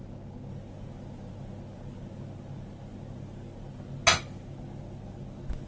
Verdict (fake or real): real